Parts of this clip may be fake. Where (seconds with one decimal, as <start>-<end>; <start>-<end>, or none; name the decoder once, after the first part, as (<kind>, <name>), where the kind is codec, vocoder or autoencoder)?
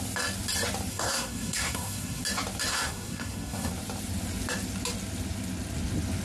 0.9-2.2 (codec, SNAC); 2.7-3.7